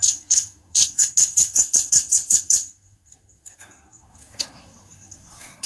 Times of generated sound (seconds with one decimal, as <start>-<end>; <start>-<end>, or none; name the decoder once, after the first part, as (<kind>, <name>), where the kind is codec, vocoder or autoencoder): 0.0-5.7 (codec, SNAC)